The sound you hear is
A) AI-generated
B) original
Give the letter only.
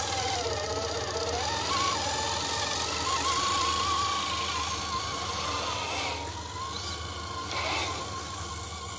B